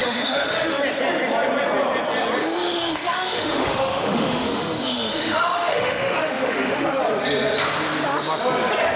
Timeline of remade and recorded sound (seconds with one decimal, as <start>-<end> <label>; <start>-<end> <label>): 0.0-0.8 remade; 0.8-2.4 recorded; 2.4-7.0 remade; 7.0-9.0 recorded